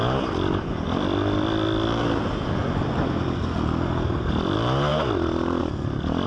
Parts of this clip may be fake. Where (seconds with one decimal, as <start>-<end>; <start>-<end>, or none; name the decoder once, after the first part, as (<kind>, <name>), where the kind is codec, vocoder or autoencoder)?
none